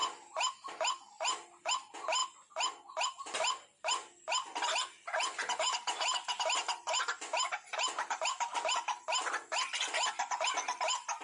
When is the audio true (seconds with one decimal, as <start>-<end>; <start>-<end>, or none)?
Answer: 0.0-11.2